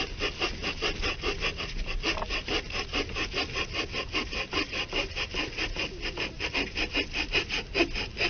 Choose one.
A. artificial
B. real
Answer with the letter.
B